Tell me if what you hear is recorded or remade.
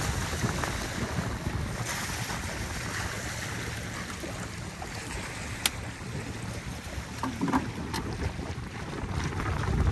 recorded